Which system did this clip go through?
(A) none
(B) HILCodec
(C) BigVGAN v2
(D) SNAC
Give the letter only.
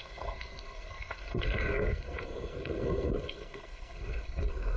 D